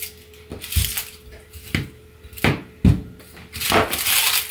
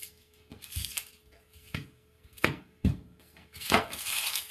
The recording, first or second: first